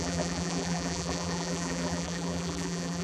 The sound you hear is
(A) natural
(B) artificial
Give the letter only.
B